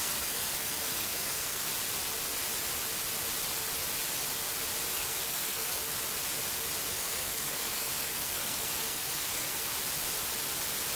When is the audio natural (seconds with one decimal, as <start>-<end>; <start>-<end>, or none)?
1.7-4.9; 5.8-6.9; 9.7-11.0

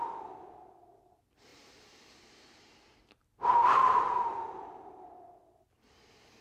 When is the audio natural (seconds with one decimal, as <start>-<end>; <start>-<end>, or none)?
0.0-1.5; 5.3-6.4